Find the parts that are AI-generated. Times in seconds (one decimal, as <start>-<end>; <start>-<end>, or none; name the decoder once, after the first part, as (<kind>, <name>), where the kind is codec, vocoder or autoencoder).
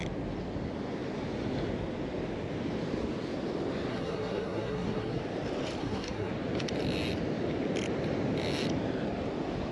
3.9-5.2 (codec, SNAC); 5.8-6.3